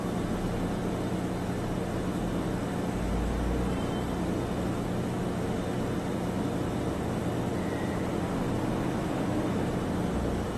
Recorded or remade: recorded